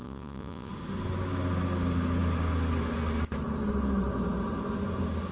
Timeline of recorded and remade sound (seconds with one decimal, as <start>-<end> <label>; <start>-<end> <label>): 0.0-0.7 remade; 0.7-5.3 recorded